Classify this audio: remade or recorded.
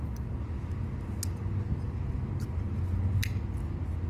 recorded